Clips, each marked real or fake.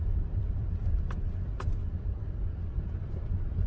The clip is fake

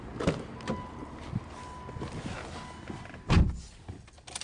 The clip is real